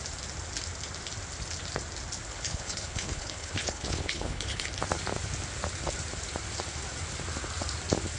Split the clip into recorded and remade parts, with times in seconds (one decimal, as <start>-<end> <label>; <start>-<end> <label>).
0.0-2.3 recorded; 2.3-4.7 remade; 4.7-8.2 recorded